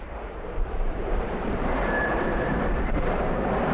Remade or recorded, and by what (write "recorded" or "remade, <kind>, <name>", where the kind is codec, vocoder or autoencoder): remade, vocoder, BigVGAN v2